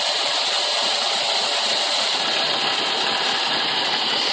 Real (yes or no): yes